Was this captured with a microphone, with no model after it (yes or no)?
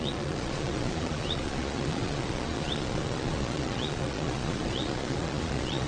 no